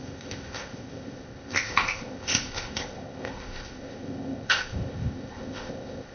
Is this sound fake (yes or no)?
yes